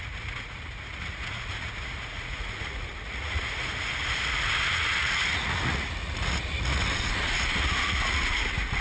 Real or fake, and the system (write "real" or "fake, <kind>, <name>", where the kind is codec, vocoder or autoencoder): fake, vocoder, Vocos